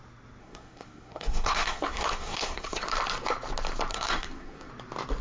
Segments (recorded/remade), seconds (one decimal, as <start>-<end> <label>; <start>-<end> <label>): 0.0-0.4 recorded; 0.4-2.9 remade; 2.9-3.9 recorded; 3.9-4.7 remade; 4.7-5.2 recorded